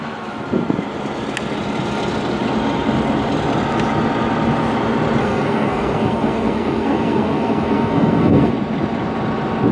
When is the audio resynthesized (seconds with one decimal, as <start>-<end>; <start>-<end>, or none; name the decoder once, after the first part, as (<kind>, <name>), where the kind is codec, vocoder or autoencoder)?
5.2-8.5 (codec, SNAC)